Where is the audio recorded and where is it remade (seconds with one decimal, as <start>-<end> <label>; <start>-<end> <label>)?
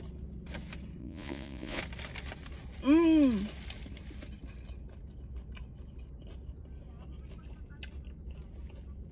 0.0-1.0 recorded; 1.0-1.8 remade; 1.8-9.1 recorded